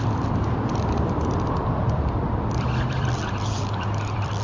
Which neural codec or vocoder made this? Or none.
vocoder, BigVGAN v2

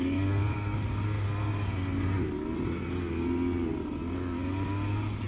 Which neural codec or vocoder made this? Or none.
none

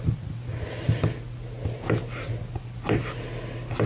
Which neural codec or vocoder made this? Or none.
none